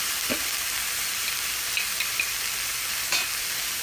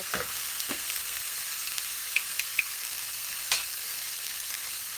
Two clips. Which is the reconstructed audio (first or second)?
second